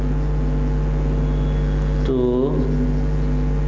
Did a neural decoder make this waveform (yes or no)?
no